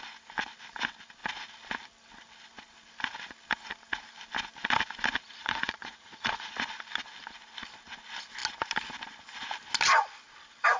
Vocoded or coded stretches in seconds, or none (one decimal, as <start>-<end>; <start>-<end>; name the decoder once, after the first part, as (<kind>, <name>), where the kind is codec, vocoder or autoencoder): 5.2-6.5 (vocoder, Vocos)